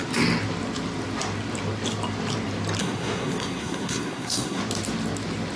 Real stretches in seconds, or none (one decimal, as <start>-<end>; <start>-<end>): 0.0-2.8; 4.6-5.6